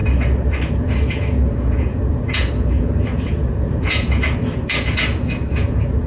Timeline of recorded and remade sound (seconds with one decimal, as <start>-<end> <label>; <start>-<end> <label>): 0.0-0.7 recorded; 0.7-6.1 remade